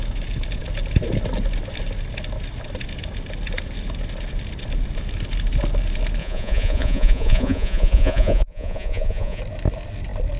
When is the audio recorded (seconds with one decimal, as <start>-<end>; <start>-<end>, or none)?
0.0-6.2; 9.4-10.4